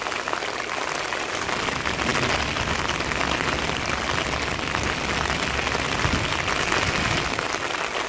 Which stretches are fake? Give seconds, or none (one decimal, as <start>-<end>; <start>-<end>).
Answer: none